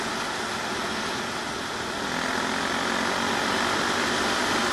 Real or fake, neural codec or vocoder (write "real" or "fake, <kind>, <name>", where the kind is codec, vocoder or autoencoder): real